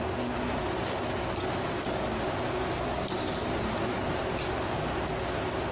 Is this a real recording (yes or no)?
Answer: yes